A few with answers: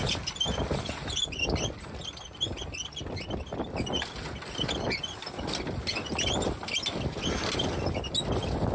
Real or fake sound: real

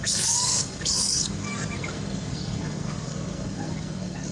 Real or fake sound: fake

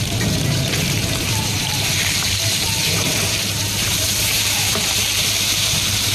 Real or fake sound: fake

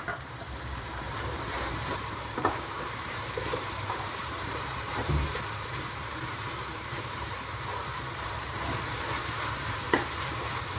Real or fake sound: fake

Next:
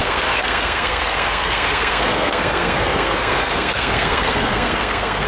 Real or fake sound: fake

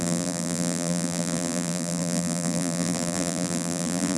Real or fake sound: fake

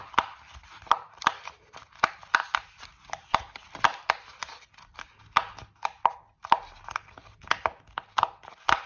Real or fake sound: real